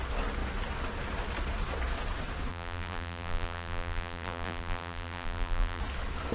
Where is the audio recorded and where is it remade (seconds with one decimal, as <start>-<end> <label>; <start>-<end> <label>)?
0.0-2.5 recorded; 2.5-5.8 remade; 5.8-6.3 recorded